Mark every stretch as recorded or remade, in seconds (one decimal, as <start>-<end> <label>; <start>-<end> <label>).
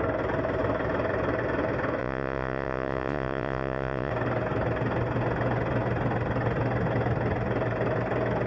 0.0-2.0 recorded; 2.0-4.1 remade; 4.1-8.5 recorded